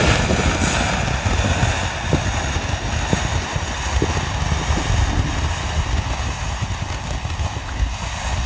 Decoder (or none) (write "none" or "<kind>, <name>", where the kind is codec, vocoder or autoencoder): none